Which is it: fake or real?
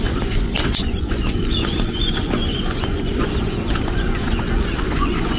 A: fake